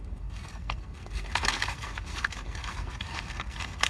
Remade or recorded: remade